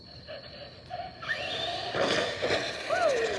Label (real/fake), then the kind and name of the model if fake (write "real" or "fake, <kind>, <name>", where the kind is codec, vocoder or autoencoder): real